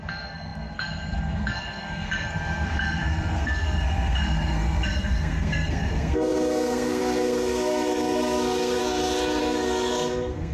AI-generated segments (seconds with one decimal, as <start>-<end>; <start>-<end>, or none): 0.0-8.8; 9.4-10.5